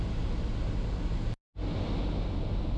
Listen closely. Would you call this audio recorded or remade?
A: recorded